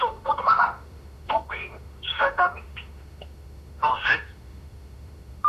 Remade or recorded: remade